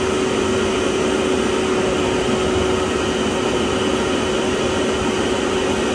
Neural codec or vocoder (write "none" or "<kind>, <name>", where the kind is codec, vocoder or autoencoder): none